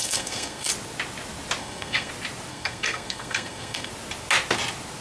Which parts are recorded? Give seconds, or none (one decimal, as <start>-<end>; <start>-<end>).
0.7-1.6; 2.1-2.5; 3.9-5.0